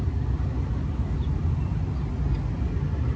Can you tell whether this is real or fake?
real